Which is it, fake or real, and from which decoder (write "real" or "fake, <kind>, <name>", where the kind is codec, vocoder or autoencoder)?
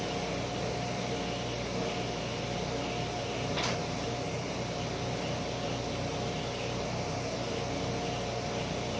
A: real